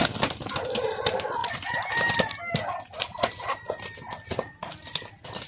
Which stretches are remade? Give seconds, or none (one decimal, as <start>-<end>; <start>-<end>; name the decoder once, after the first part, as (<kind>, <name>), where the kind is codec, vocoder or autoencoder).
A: none